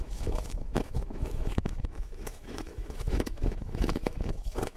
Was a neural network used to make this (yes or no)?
yes